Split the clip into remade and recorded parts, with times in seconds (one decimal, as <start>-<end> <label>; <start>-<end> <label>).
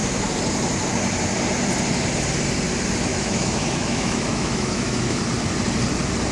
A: 0.0-3.1 recorded; 3.1-5.2 remade; 5.2-6.3 recorded